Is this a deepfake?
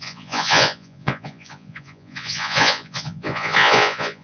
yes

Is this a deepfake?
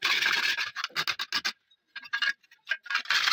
no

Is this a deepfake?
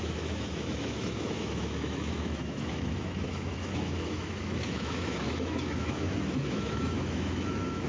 yes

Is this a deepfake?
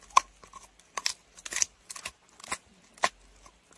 no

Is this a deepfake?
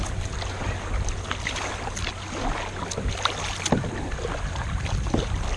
no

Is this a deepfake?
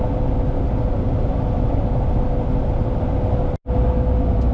no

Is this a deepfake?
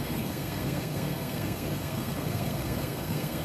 yes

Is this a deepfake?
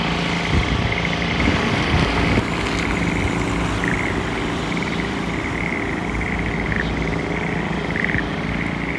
no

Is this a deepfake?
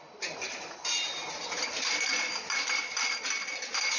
no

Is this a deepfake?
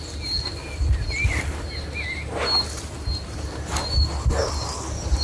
no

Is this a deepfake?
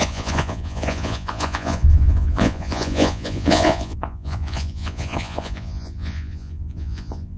yes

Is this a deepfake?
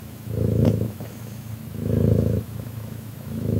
yes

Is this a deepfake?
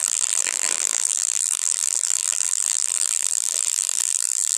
yes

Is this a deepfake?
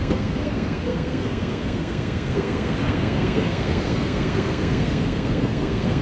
yes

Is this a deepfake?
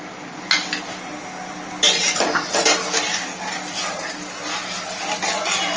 no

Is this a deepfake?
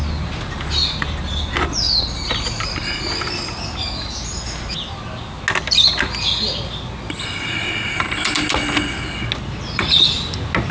no